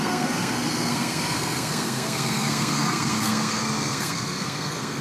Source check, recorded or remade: remade